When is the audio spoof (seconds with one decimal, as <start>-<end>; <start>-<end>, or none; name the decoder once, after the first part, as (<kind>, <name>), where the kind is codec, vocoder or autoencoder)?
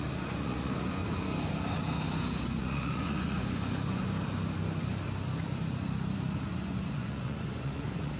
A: 0.0-1.0 (vocoder, Vocos); 2.6-4.0; 6.5-8.2